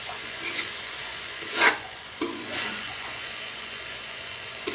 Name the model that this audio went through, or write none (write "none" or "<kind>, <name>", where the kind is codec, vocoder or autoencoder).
vocoder, Vocos